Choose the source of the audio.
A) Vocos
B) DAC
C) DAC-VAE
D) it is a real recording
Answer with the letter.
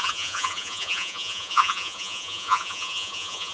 A